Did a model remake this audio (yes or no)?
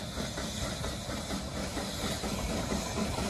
no